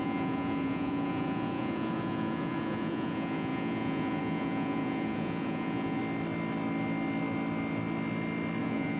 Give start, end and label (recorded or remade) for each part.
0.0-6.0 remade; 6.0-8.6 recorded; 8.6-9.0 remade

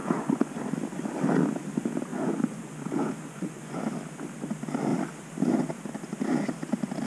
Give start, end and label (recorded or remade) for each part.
0.0-0.5 remade; 0.5-2.1 recorded; 2.1-3.8 remade; 3.8-7.1 recorded

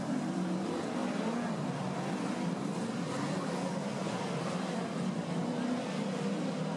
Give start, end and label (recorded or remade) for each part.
0.0-6.8 recorded

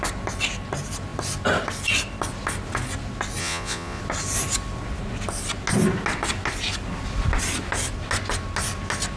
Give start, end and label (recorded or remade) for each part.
0.0-3.4 recorded; 3.4-4.0 remade; 4.0-9.2 recorded